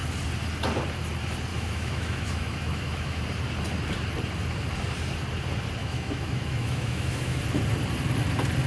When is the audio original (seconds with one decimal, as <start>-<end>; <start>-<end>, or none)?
0.0-1.5; 3.2-5.8; 7.4-8.7